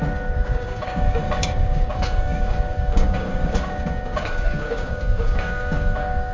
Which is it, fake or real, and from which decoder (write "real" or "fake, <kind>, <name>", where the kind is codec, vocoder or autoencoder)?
fake, codec, DAC